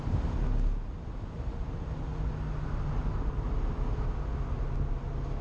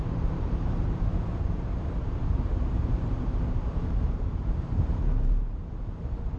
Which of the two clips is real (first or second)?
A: first